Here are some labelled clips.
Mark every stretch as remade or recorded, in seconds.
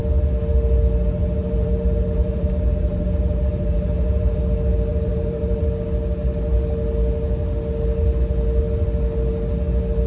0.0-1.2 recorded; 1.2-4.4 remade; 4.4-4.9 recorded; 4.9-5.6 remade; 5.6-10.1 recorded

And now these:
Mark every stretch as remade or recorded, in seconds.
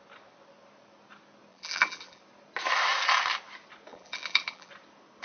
0.0-1.5 recorded; 1.5-2.2 remade; 2.2-3.9 recorded; 3.9-4.7 remade; 4.7-5.2 recorded